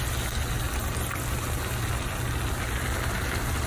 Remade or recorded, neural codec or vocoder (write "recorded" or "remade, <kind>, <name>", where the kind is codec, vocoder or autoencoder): recorded